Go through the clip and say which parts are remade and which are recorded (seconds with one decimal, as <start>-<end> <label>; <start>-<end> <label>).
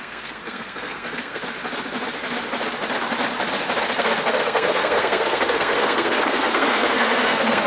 0.0-1.4 remade; 1.4-4.0 recorded; 4.0-7.7 remade